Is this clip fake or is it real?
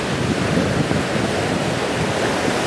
real